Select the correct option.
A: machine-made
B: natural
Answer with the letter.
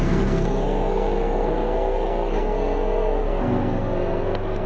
A